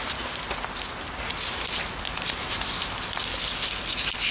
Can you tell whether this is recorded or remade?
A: recorded